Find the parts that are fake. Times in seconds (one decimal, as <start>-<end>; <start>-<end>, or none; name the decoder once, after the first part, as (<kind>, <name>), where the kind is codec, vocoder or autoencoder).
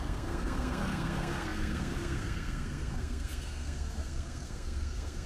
0.0-5.3 (codec, SNAC)